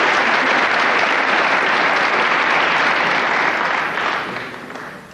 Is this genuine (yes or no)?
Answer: yes